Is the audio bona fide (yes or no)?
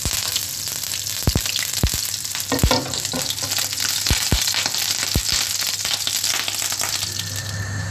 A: yes